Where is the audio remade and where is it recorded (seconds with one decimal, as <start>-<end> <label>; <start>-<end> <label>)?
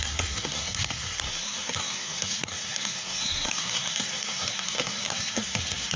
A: 0.0-6.0 remade